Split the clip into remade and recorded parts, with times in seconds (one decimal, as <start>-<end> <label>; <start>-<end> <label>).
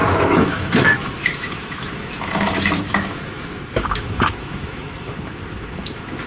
0.0-6.3 remade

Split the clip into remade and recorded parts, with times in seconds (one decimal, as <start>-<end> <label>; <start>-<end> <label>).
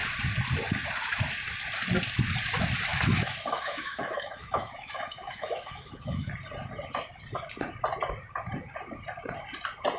0.0-2.9 recorded; 2.9-6.3 remade; 6.3-10.0 recorded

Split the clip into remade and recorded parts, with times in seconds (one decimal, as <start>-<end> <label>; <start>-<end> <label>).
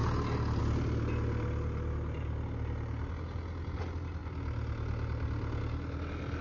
0.0-6.4 recorded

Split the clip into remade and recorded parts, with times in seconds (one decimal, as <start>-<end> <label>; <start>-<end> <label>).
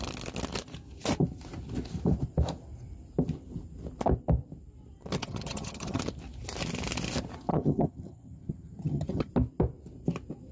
0.0-5.2 recorded; 5.2-6.0 remade; 6.0-7.5 recorded; 7.5-9.3 remade; 9.3-10.5 recorded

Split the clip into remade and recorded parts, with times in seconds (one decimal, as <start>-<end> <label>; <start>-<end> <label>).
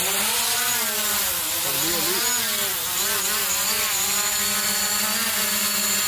0.0-6.1 recorded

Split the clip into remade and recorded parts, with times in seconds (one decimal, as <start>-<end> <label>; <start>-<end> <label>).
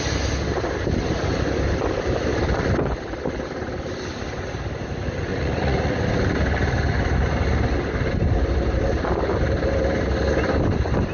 0.0-5.3 recorded; 5.3-6.0 remade; 6.0-11.1 recorded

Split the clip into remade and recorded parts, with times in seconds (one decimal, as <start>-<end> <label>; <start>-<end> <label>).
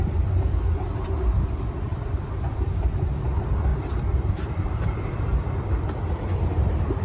0.0-1.9 recorded; 1.9-2.7 remade; 2.7-3.7 recorded; 3.7-4.8 remade; 4.8-5.3 recorded; 5.3-6.2 remade; 6.2-7.0 recorded